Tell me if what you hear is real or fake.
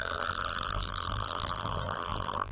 fake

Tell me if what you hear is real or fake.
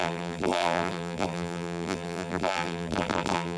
fake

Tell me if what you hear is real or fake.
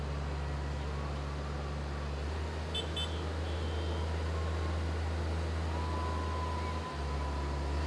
real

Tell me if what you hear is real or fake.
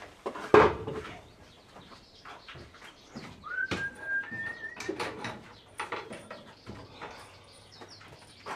fake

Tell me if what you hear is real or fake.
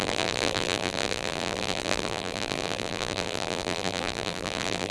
fake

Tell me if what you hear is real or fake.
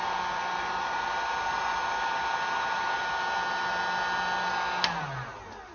real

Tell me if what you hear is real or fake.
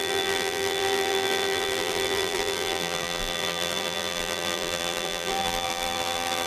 fake